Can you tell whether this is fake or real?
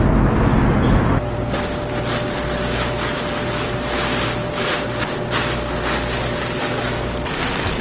real